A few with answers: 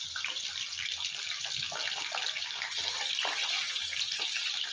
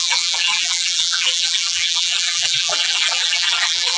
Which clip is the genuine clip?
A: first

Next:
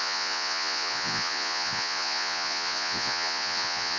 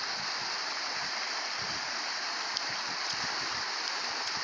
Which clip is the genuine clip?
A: second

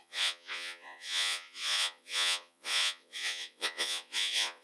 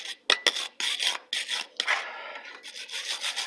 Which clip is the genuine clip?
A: second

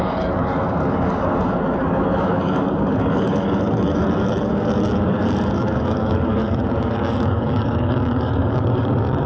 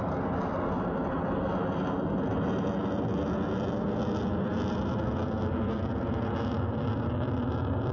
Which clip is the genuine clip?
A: second